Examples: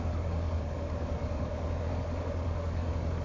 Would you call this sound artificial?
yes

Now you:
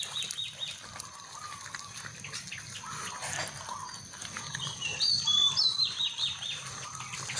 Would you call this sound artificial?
no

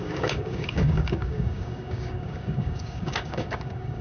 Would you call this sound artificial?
yes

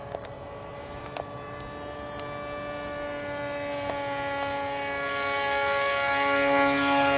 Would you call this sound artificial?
no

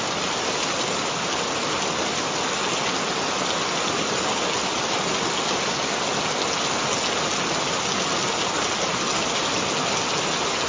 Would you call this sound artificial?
no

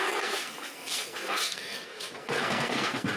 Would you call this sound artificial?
yes